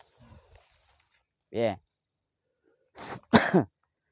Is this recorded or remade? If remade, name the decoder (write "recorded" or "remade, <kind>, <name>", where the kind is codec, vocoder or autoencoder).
recorded